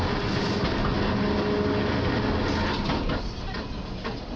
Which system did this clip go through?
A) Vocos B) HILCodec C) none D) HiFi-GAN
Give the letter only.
C